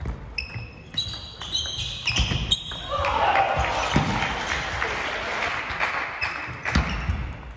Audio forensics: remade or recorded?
recorded